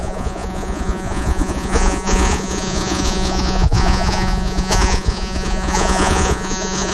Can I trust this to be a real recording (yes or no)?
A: no